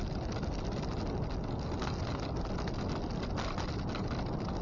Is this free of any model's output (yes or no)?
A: yes